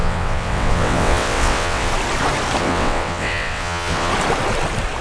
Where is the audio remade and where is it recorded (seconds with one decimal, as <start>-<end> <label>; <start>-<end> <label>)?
0.0-1.9 remade; 1.9-2.6 recorded; 2.6-4.1 remade; 4.1-5.0 recorded